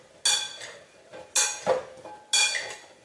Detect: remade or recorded recorded